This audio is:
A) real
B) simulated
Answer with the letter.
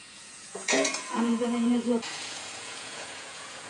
B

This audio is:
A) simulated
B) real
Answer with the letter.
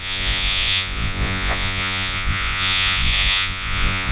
A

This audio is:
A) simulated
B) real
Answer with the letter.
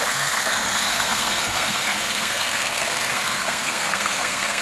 A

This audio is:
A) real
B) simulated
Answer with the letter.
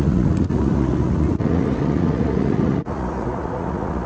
B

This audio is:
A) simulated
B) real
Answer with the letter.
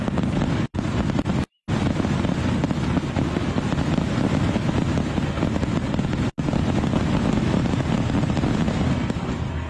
B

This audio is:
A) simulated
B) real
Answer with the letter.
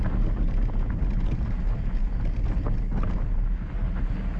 B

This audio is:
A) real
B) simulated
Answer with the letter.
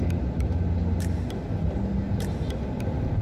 A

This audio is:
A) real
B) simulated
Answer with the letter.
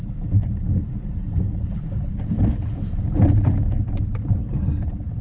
A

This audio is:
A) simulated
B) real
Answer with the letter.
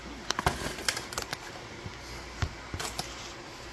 B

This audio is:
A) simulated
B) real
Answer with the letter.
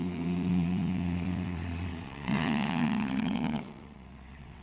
A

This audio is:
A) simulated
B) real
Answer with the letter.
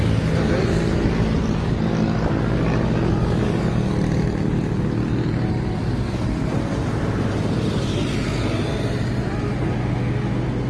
B